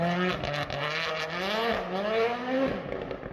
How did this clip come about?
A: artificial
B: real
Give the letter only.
B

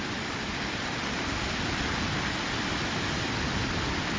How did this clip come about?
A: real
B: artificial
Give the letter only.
A